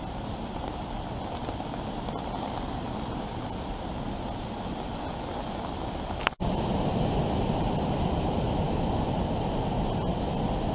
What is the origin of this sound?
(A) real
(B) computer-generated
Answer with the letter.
A